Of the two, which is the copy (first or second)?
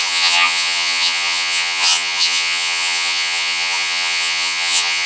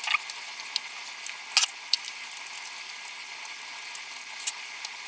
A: first